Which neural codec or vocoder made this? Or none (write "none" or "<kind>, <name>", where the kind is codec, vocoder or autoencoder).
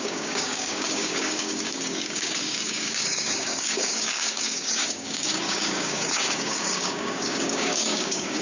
codec, DAC